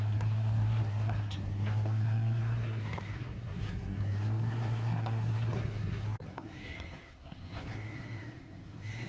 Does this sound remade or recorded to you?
remade